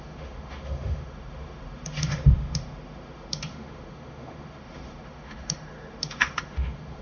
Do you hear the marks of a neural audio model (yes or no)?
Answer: yes